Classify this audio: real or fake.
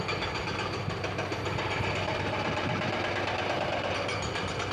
real